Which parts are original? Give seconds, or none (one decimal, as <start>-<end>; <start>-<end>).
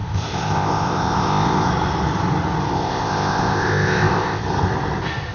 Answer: 1.7-2.7; 4.4-5.3